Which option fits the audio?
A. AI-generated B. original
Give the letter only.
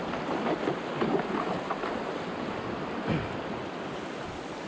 B